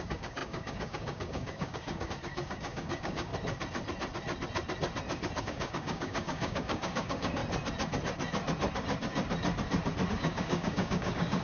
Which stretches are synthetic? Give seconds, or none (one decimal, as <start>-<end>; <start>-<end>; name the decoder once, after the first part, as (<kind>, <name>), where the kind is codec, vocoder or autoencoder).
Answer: 0.0-3.3 (codec, DAC); 5.4-7.4; 10.1-11.4